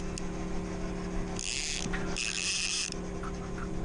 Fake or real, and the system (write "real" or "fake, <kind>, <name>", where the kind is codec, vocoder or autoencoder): real